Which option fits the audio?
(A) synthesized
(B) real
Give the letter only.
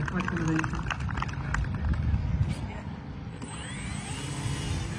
B